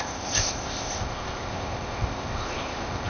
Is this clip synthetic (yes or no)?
yes